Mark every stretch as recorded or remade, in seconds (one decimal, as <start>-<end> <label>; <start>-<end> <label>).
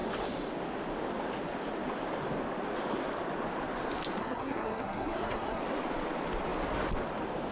0.0-4.2 recorded; 4.2-5.6 remade; 5.6-7.5 recorded